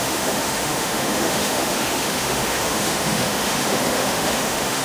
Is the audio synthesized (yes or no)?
yes